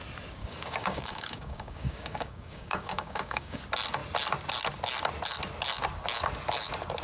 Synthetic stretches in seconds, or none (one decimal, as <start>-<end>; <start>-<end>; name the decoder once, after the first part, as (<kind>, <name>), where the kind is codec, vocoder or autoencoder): 0.4-3.6 (codec, DAC)